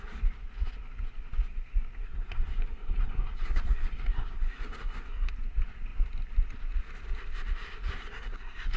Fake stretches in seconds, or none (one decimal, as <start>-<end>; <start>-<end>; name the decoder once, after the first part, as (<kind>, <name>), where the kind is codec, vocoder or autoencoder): 2.0-5.3 (codec, SNAC); 8.0-8.8